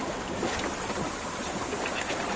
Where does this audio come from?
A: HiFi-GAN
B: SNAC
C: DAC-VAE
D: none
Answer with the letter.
D